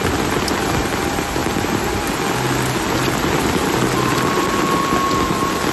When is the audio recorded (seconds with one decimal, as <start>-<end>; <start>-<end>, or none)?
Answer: 0.0-5.7